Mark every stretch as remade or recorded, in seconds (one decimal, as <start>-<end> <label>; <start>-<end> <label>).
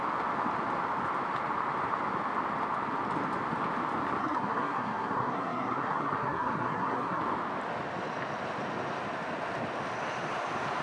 0.0-4.2 recorded; 4.2-7.2 remade; 7.2-10.8 recorded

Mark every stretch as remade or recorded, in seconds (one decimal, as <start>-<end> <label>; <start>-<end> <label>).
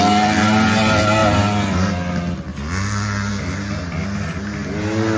0.0-5.2 recorded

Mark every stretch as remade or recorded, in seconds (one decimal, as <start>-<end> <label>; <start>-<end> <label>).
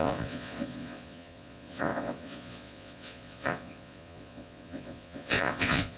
0.0-6.0 remade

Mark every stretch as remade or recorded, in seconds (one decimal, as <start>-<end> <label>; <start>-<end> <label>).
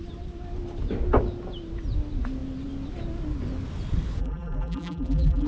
0.0-4.2 recorded; 4.2-5.5 remade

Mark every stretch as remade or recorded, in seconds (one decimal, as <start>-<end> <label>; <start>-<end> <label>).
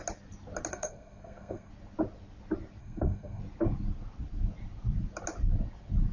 0.0-0.7 recorded; 0.7-1.7 remade; 1.7-2.8 recorded; 2.8-3.4 remade; 3.4-6.1 recorded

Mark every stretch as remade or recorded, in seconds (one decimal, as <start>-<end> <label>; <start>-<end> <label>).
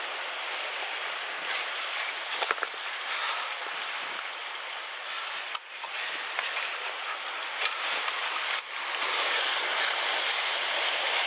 0.0-11.3 recorded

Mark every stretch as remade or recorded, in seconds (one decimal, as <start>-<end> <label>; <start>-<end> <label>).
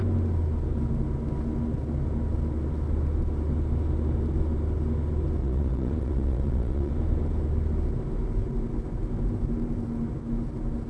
0.0-5.4 recorded; 5.4-6.9 remade; 6.9-10.9 recorded